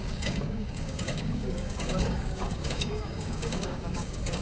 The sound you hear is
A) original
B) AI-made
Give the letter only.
B